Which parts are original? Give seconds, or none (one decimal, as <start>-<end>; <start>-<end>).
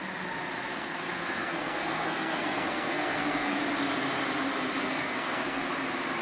0.0-0.7; 3.6-4.8; 5.7-6.2